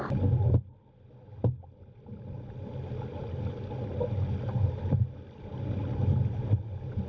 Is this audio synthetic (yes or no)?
no